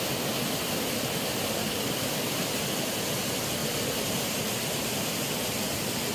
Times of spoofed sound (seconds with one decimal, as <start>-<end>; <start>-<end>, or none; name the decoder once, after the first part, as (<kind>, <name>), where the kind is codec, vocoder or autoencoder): 1.6-2.5 (codec, DAC)